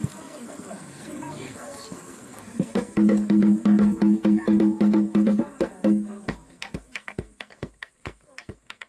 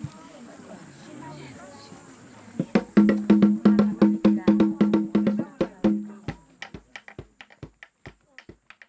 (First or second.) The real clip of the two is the second